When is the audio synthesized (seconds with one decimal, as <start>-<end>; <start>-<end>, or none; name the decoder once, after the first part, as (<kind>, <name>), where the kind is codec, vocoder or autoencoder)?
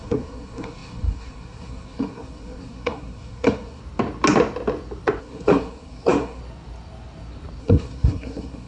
0.0-3.8 (codec, SNAC); 5.2-6.4; 7.6-8.7